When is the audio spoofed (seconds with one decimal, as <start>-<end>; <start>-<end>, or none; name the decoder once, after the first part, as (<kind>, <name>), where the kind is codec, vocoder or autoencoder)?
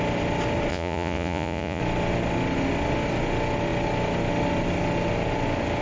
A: 0.7-1.8 (vocoder, Vocos)